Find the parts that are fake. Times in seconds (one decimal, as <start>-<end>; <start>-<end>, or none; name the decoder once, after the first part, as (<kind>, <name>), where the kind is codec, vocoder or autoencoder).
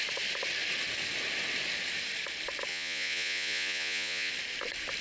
2.7-4.3 (vocoder, Vocos)